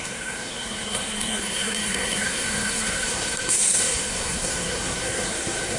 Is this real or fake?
fake